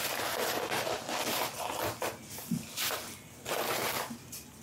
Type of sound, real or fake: real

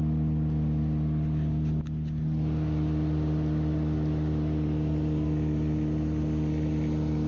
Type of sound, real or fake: real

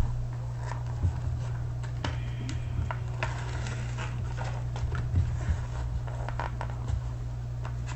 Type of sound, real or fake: real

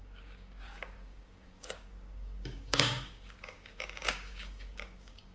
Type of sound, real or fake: fake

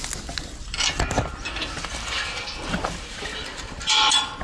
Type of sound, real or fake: real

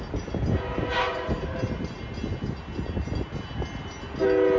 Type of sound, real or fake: real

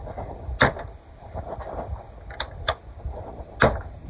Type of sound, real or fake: real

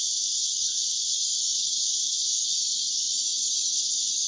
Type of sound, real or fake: fake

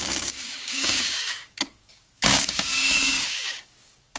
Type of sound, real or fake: fake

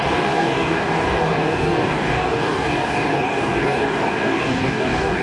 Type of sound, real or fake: fake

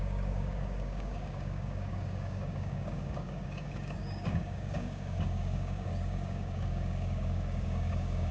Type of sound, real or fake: fake